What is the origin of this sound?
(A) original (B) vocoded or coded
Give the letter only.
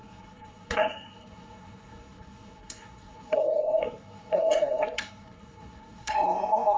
B